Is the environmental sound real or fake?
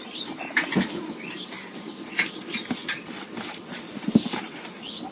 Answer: real